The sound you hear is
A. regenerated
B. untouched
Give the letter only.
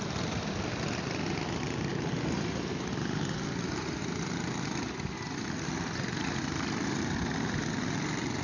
B